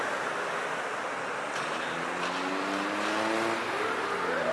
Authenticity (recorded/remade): recorded